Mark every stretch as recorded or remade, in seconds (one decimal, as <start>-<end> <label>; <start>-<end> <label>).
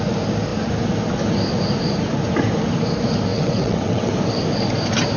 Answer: 0.0-3.3 recorded; 3.3-4.1 remade; 4.1-5.2 recorded